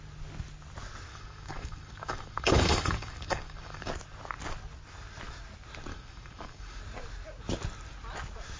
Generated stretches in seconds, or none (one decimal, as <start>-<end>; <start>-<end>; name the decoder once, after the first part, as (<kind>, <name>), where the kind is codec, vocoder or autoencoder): 1.1-3.9 (codec, DAC); 5.9-6.8